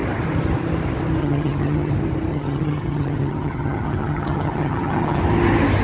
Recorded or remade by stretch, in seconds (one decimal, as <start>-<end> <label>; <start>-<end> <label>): 0.0-1.2 recorded; 1.2-1.9 remade; 1.9-2.3 recorded; 2.3-5.2 remade; 5.2-5.8 recorded